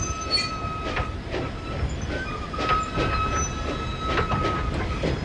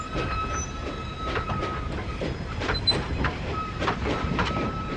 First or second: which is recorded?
first